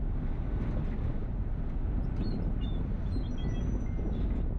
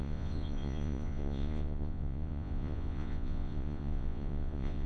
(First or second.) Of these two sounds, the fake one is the second